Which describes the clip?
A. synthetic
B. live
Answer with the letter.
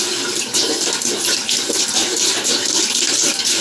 B